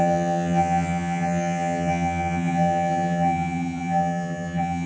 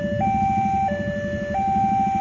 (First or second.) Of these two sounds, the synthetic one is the first